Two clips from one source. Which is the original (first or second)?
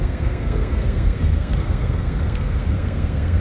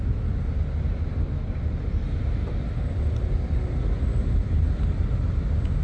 second